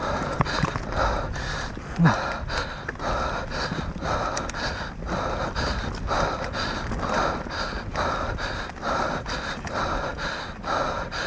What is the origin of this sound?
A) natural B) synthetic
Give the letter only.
A